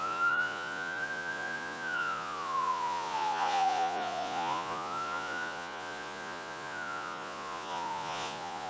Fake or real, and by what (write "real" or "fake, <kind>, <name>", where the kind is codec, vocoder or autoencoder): fake, vocoder, Vocos